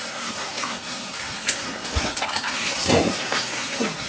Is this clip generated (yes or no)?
yes